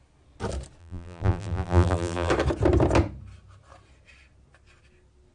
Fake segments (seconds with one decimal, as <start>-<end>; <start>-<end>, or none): 0.8-2.3